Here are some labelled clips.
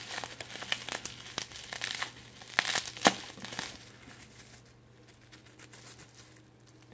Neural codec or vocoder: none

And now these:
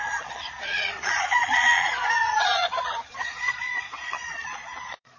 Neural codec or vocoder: vocoder, Vocos